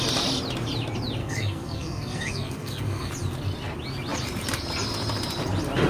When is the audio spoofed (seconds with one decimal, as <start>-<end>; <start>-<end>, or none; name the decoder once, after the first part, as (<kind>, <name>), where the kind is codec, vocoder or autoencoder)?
1.2-3.1 (codec, SNAC)